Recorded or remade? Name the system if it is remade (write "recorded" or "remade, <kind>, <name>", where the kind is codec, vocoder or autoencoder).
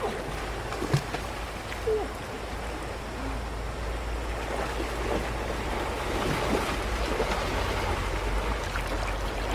recorded